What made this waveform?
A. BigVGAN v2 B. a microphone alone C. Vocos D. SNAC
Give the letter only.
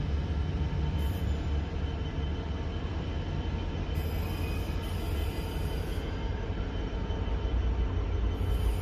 B